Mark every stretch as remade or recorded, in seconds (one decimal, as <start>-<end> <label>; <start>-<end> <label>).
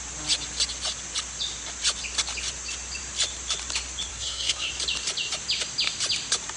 0.0-4.1 recorded; 4.1-4.7 remade; 4.7-6.6 recorded